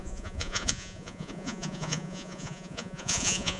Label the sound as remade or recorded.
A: remade